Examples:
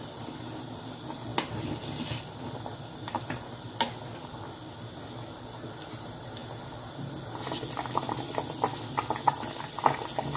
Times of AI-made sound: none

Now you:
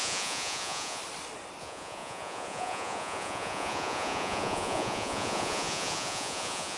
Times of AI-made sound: 0.0-1.0; 1.6-6.8

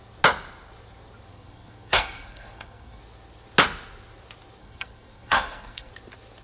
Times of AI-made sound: 1.3-3.0; 4.6-5.9

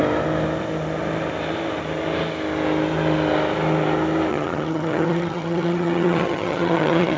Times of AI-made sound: 4.3-7.2